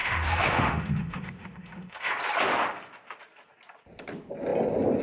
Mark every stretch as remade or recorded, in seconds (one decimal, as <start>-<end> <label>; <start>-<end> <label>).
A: 0.0-2.1 remade; 2.1-5.0 recorded